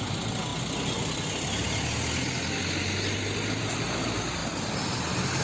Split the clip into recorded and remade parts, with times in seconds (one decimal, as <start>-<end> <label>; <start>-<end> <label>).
0.0-5.4 recorded